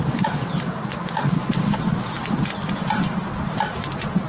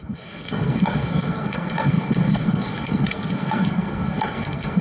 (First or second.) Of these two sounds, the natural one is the first